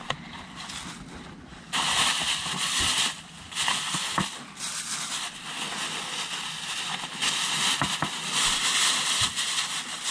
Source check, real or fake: real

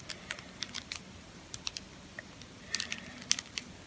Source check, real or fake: real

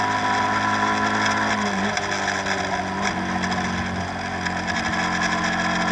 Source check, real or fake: real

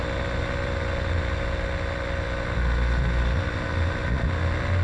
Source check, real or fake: real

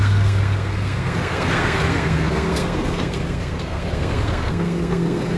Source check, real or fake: fake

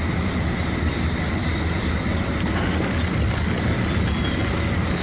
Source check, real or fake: real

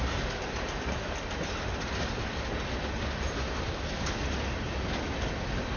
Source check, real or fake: real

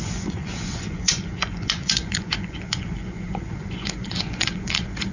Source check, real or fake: fake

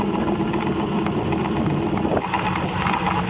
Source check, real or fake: real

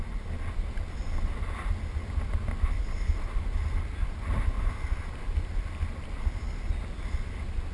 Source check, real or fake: real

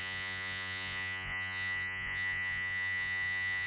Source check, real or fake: fake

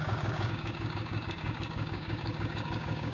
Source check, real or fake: fake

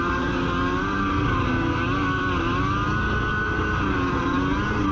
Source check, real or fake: real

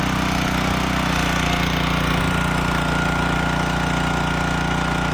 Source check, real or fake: real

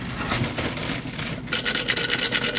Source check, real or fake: real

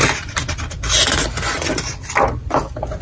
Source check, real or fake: real